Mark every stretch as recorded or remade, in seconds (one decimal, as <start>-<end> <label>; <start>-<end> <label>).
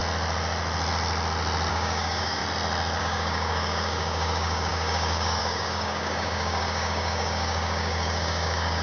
0.0-1.7 recorded; 1.7-2.4 remade; 2.4-3.0 recorded; 3.0-8.8 remade